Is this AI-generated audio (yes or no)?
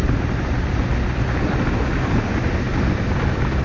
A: no